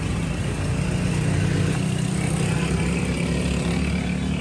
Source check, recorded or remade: recorded